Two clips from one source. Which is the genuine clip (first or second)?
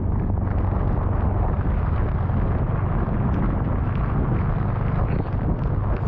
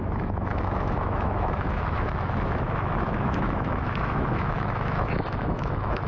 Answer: first